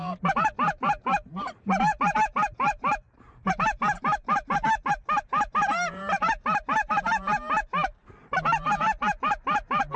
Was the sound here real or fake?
fake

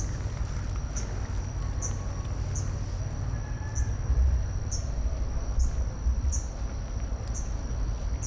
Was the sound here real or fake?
real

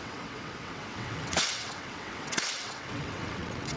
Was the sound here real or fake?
fake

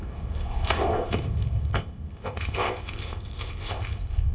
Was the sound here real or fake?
fake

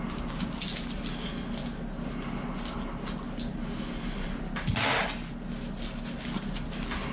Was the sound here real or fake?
real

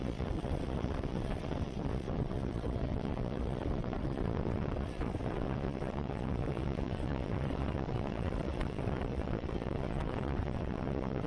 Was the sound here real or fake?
fake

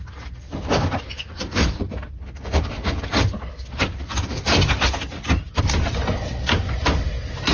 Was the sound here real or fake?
real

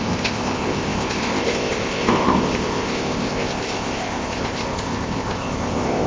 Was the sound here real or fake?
fake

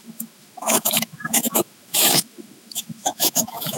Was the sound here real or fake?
fake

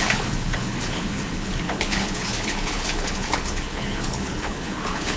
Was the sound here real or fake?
fake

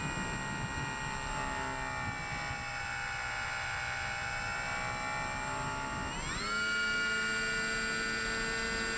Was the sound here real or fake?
real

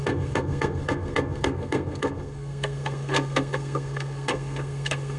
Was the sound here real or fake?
fake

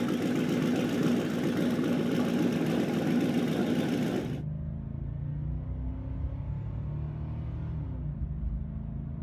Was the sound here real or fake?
real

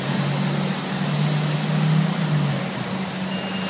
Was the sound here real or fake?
real